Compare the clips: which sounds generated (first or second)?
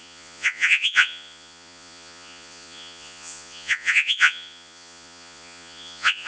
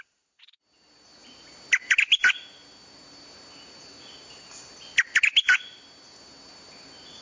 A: first